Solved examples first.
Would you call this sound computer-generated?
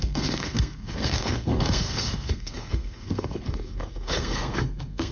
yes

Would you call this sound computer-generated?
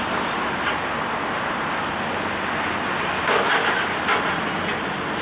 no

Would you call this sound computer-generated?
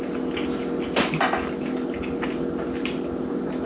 no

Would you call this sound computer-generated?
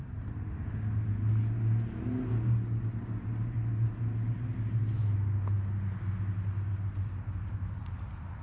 no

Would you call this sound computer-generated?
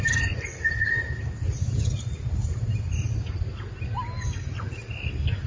no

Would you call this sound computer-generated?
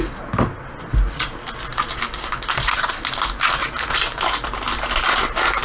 no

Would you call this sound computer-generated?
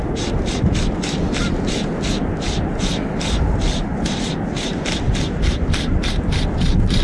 no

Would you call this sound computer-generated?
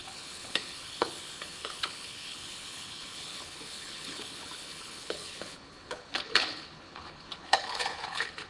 yes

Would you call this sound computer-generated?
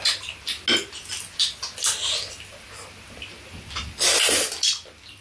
no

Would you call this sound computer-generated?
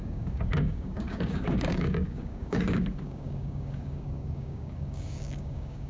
yes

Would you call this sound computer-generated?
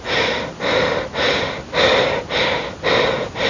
no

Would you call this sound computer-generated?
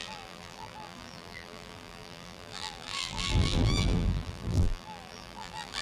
yes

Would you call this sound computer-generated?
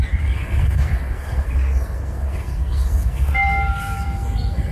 yes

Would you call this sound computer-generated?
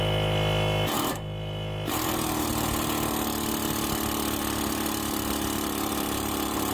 no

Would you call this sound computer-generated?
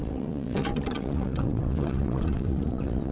yes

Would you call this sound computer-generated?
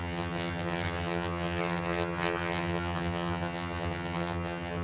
yes